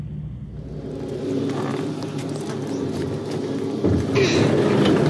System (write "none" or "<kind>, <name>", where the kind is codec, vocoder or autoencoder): none